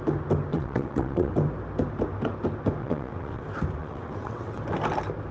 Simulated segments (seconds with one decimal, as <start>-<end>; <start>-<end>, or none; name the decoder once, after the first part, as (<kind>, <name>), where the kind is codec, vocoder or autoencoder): 0.5-1.3 (vocoder, WaveNeXt); 2.8-3.4; 3.8-4.6